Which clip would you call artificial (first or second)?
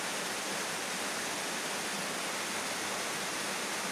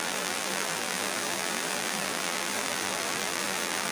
second